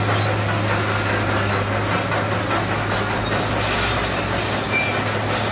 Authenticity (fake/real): real